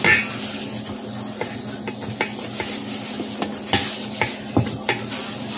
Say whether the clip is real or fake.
real